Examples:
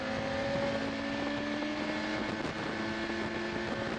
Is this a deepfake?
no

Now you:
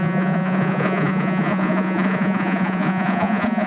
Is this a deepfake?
yes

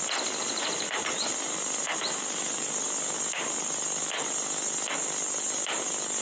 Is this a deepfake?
no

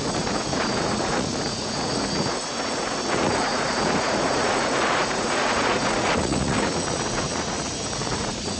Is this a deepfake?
yes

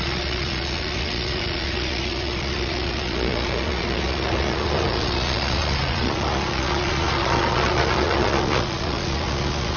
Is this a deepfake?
yes